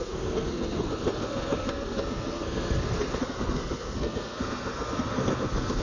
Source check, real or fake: fake